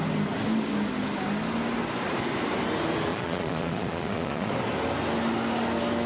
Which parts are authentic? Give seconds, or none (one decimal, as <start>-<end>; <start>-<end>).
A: 0.0-3.1; 4.5-6.1